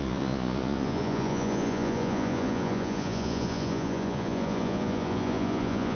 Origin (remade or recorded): remade